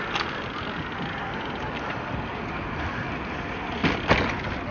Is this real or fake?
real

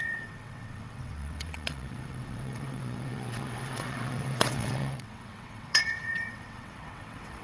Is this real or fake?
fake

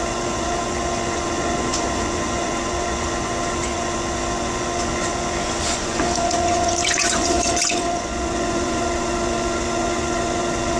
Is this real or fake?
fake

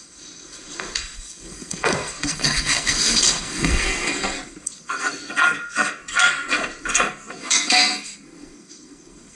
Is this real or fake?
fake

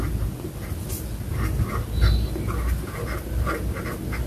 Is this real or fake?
real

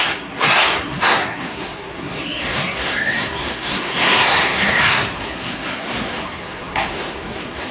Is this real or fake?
fake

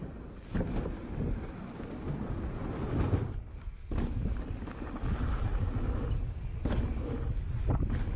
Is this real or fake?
real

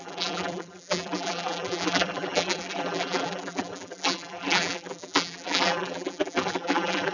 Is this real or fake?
fake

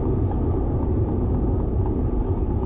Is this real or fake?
real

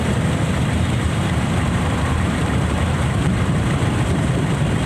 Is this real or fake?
fake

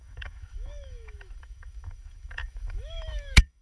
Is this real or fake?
fake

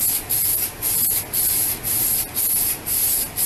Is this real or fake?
real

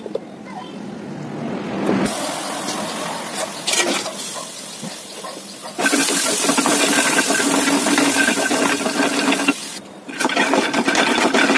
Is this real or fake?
real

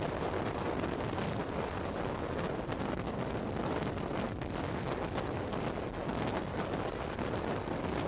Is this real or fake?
real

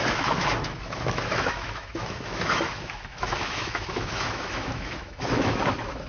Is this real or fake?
fake